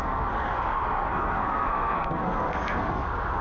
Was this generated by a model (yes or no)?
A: yes